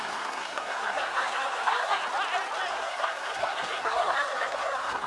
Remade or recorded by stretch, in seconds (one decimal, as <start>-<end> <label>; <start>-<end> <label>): 0.0-2.0 remade; 2.0-2.7 recorded; 2.7-5.1 remade